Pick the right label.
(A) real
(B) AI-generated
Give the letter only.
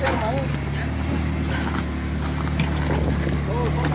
A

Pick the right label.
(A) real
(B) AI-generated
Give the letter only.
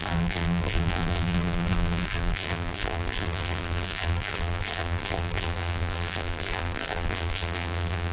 B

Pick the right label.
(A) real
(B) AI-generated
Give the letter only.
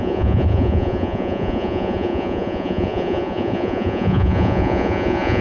B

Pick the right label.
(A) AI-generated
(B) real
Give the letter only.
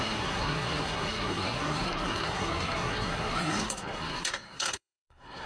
A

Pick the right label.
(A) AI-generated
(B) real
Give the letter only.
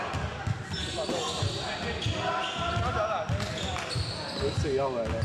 B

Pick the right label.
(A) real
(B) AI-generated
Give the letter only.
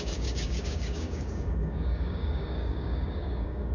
B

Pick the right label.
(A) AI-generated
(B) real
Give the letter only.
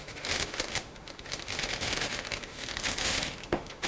A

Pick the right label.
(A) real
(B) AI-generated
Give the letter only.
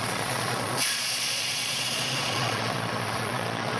B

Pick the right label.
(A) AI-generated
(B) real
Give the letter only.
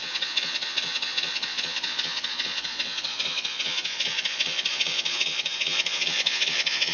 A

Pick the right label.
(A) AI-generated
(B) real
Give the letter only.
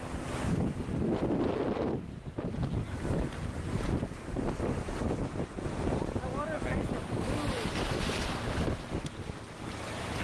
B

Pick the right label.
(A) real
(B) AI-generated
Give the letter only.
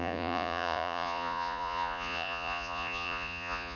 B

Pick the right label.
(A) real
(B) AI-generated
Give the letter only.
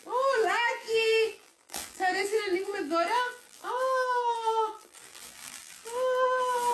B